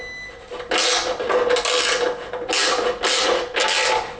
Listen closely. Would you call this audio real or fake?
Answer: real